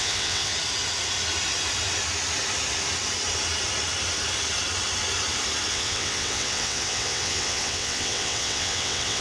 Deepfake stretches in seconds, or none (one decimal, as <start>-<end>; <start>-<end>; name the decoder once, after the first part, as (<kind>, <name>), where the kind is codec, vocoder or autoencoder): 0.0-0.5 (vocoder, WaveNeXt); 5.7-9.2